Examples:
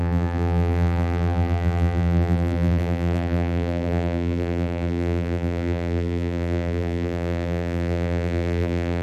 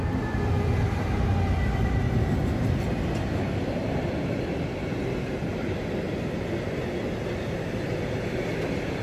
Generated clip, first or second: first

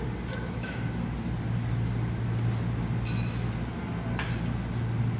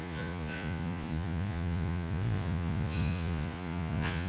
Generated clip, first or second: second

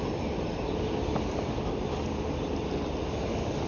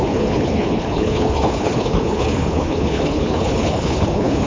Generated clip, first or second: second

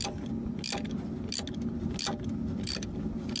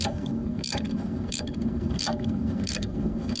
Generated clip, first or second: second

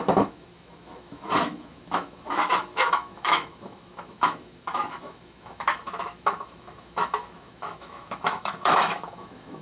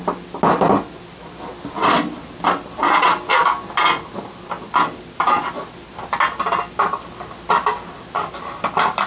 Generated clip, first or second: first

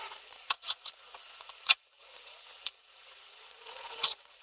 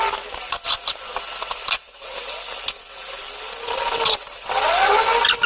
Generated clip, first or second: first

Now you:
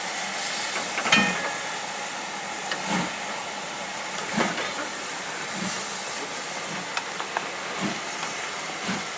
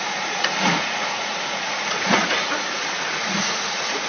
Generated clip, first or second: second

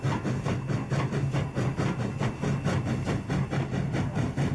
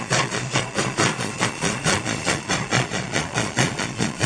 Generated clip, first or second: second